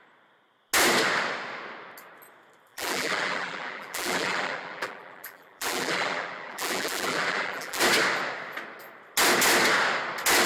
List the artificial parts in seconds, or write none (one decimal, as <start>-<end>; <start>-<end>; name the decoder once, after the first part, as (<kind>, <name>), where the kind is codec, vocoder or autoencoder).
2.7-7.8 (vocoder, BigVGAN v2)